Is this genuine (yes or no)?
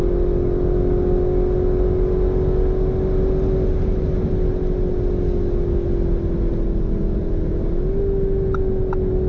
yes